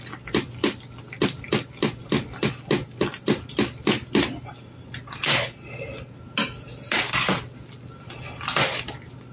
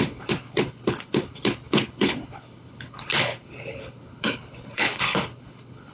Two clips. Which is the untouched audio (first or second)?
first